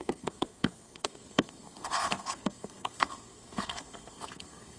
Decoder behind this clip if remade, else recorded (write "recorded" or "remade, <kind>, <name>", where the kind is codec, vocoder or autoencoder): remade, codec, SNAC